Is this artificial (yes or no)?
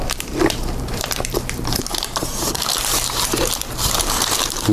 yes